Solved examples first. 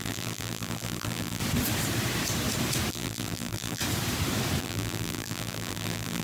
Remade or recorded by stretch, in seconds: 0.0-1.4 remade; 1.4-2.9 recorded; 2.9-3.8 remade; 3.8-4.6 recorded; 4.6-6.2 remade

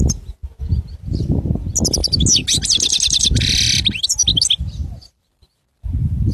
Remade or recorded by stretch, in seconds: 0.0-4.8 recorded; 4.8-5.3 remade; 5.3-6.3 recorded